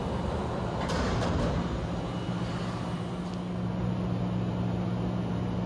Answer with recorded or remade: recorded